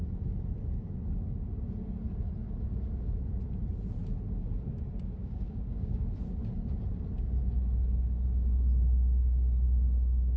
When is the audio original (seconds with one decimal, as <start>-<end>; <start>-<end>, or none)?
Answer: 0.0-5.2; 6.0-10.4